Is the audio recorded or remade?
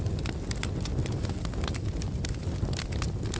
recorded